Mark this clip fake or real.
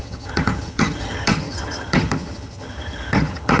fake